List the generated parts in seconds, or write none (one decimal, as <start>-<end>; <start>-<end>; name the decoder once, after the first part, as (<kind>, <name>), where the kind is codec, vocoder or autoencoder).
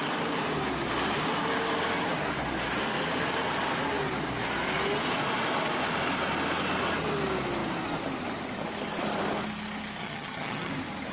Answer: 10.0-10.7 (vocoder, HiFi-GAN)